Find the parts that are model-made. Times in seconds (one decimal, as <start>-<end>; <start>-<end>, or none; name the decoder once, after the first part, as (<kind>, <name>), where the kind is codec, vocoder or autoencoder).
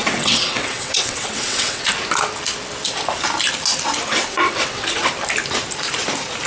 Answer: 0.0-1.9 (vocoder, WaveNeXt); 4.1-5.1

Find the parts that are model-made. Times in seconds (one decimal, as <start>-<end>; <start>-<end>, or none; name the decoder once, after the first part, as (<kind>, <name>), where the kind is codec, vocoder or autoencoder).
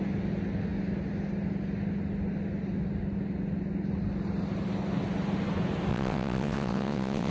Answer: 5.9-7.3 (vocoder, WaveNeXt)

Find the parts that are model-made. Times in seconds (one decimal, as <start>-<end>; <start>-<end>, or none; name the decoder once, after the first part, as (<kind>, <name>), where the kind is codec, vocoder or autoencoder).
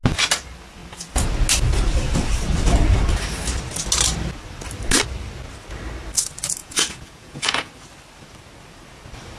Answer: 6.6-7.7 (vocoder, Vocos)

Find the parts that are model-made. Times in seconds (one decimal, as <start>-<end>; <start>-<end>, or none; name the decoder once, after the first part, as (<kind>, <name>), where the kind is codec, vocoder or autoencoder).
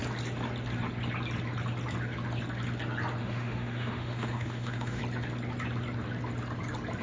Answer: 3.2-5.0 (autoencoder, DAC-VAE)